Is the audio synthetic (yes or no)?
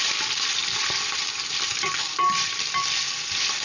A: yes